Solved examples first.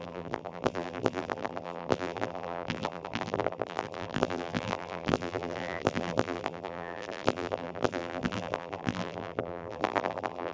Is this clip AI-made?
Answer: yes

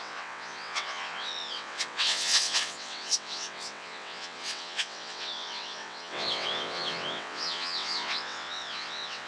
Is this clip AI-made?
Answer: yes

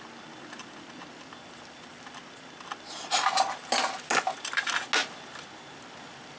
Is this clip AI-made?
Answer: no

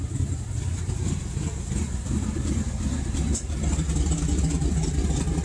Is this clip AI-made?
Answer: no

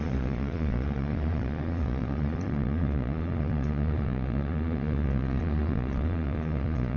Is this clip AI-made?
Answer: yes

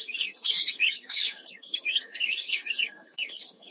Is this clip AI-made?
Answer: yes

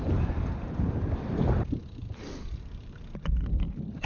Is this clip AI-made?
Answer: no